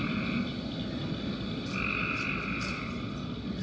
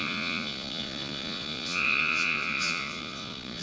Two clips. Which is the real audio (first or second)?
first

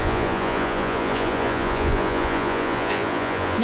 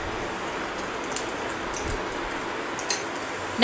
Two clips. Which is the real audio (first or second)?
second